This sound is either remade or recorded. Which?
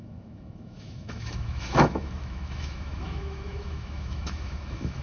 remade